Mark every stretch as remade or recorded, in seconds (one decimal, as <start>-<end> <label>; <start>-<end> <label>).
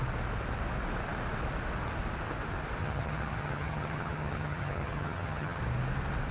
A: 0.0-2.8 recorded; 2.8-5.6 remade; 5.6-6.3 recorded